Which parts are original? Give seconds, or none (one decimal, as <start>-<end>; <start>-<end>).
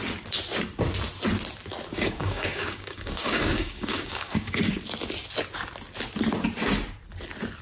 0.0-1.9; 4.8-7.6